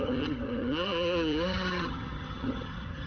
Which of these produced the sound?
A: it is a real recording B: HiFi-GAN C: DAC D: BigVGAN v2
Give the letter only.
B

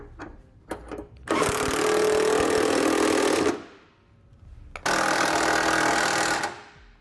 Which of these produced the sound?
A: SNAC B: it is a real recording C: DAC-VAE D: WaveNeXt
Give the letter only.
B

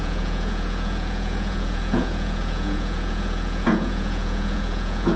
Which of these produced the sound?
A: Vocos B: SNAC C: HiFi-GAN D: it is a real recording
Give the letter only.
A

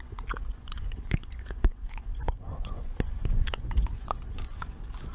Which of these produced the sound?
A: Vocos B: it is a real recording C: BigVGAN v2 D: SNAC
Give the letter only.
A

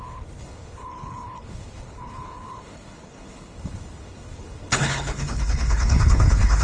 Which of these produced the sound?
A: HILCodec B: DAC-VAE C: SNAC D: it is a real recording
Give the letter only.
A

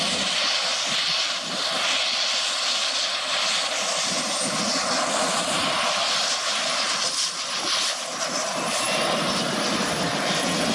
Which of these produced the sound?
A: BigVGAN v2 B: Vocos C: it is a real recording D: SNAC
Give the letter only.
C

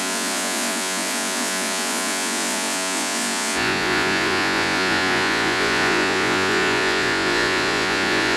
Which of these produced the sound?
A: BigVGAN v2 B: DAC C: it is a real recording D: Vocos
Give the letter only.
D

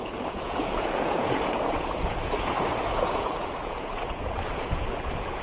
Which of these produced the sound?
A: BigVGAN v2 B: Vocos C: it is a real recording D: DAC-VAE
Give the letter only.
B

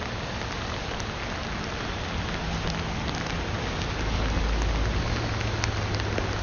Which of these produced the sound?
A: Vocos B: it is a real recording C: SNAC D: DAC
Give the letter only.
B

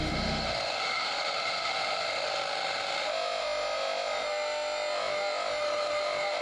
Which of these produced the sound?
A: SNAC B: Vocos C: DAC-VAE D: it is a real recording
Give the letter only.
C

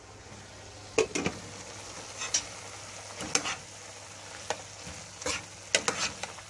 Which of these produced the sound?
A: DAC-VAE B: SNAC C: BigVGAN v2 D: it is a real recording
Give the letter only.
D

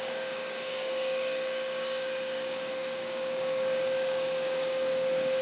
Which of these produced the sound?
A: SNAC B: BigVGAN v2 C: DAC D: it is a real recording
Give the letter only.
C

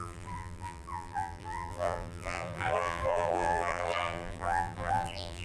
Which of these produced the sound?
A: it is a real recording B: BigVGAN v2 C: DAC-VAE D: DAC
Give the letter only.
B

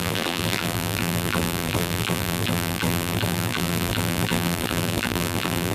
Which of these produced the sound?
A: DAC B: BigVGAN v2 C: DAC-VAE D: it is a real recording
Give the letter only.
B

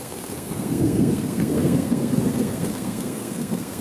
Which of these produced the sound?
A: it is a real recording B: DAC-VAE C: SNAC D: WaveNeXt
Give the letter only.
C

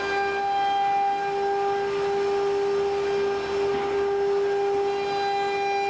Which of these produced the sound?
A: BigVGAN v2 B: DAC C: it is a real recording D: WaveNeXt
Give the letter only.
C